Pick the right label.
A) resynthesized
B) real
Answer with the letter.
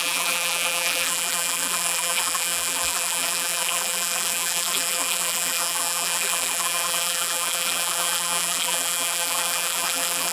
A